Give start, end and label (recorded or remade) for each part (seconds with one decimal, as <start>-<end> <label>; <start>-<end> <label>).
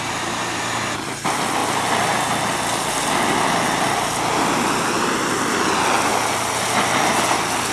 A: 0.0-7.7 recorded